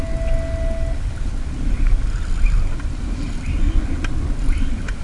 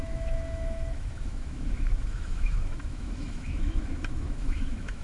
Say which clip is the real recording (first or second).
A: first